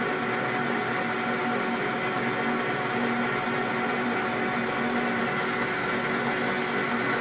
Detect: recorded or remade recorded